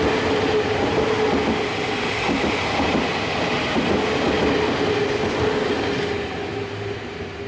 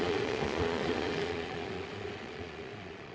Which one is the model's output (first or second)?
second